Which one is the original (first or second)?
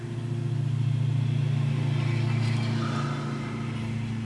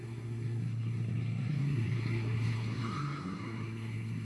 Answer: first